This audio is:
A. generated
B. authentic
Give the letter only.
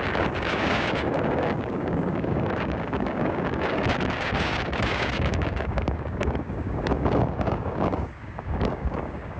A